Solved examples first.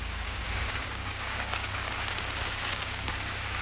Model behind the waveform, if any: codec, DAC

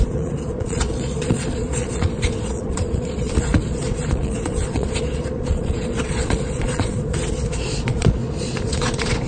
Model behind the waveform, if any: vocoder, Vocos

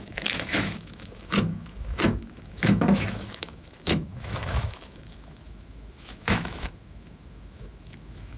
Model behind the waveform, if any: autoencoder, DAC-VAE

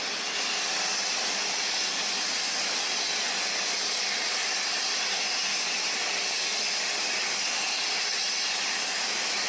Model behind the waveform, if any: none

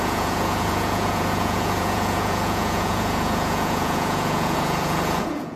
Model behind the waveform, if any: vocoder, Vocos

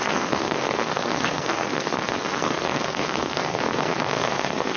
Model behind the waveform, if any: codec, SNAC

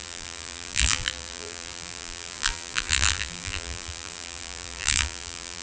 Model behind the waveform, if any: vocoder, BigVGAN v2